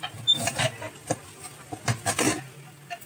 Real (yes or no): yes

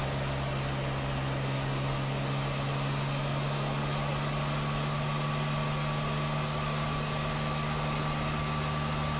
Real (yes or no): yes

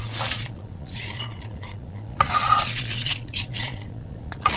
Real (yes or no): no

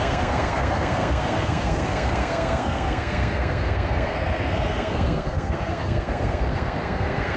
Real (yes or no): no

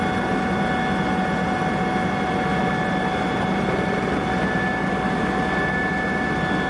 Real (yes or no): yes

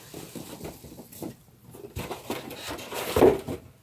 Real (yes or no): yes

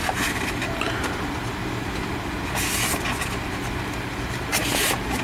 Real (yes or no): yes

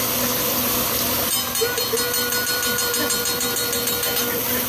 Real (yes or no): yes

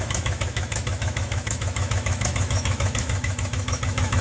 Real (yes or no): no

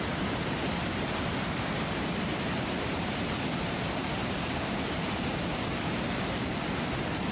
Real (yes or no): no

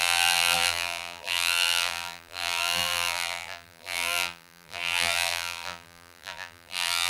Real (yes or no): no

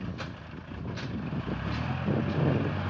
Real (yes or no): yes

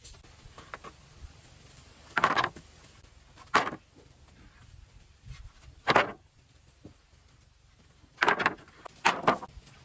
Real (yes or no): yes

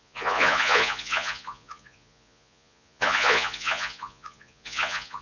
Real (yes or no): no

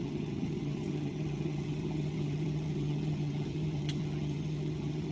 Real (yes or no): no